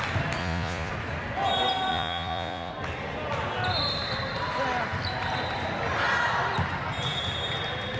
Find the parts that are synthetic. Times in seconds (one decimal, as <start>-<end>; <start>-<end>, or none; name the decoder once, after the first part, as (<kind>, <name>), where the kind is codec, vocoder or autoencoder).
0.4-0.9 (vocoder, Vocos); 1.9-2.7